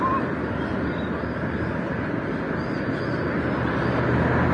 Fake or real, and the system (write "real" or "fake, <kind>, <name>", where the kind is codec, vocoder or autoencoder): real